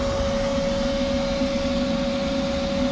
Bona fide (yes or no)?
yes